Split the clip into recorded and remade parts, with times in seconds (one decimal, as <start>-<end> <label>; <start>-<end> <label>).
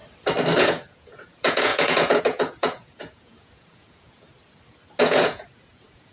0.0-0.6 recorded; 0.6-4.3 remade; 4.3-5.0 recorded; 5.0-6.1 remade